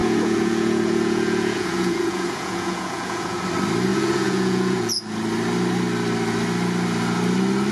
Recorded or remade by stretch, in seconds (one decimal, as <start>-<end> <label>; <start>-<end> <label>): 0.0-3.4 remade; 3.4-3.9 recorded; 3.9-5.0 remade; 5.0-7.7 recorded